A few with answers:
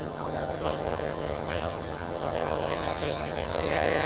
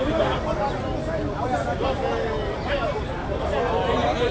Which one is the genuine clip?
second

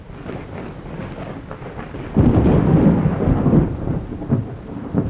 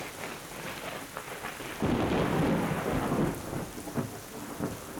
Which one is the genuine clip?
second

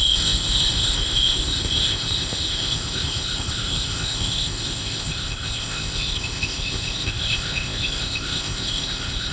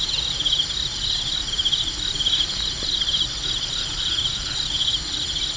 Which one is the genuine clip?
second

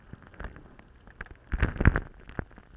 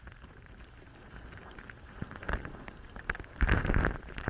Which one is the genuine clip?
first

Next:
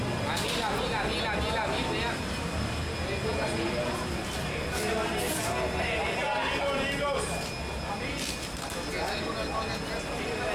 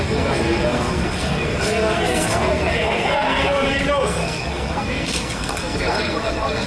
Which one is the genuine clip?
first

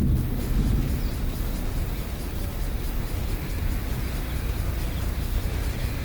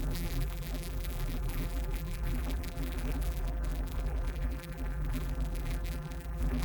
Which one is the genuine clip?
first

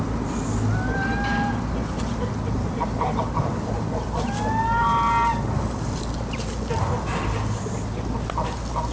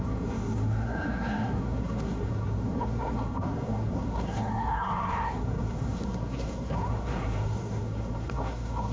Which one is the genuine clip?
first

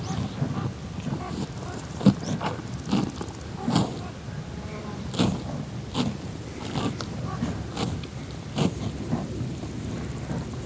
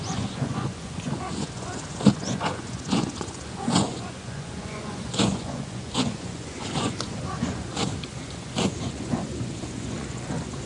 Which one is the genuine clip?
first